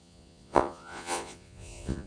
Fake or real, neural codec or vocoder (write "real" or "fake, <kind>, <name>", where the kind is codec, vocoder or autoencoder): fake, vocoder, Vocos